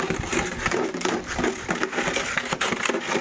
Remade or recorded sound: recorded